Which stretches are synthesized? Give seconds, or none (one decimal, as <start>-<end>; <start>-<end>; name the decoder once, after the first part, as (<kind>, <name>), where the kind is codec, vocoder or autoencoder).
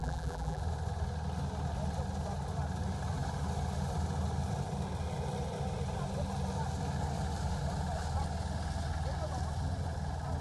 0.0-0.6 (vocoder, BigVGAN v2)